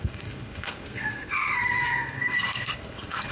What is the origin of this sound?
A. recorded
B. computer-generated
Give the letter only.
B